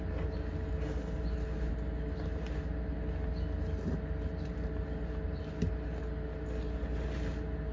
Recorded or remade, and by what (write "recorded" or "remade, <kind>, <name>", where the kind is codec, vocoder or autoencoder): recorded